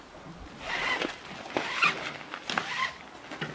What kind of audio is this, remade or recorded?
recorded